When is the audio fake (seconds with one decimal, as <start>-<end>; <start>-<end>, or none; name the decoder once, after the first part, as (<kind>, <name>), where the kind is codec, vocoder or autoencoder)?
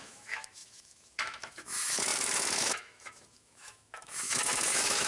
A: 0.0-5.1 (autoencoder, DAC-VAE)